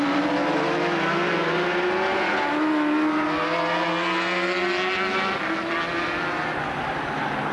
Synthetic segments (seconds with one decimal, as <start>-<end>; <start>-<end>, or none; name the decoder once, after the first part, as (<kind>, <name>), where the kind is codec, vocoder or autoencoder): 0.0-2.1 (vocoder, BigVGAN v2); 6.6-7.5